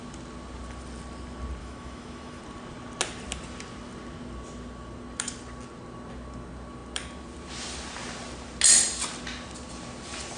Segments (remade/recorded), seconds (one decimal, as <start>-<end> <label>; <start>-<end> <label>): 0.0-1.6 recorded; 1.6-2.4 remade; 2.4-10.4 recorded